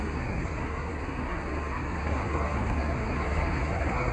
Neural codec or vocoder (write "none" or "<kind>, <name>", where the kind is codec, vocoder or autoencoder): codec, SNAC